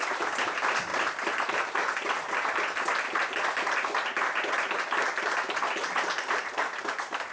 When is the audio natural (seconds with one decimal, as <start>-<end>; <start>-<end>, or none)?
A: 0.0-7.3